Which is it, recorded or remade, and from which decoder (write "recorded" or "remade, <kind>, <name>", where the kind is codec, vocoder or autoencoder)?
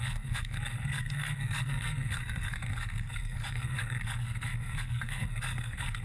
remade, codec, SNAC